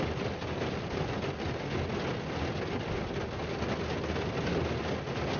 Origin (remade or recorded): recorded